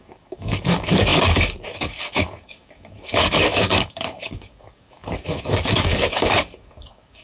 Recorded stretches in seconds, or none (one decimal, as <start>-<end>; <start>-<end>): none